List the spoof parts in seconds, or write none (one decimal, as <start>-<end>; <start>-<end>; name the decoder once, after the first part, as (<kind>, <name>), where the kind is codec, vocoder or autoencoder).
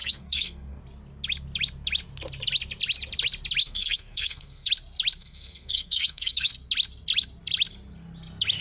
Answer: 0.0-0.8 (codec, SNAC); 3.6-4.7; 5.2-6.5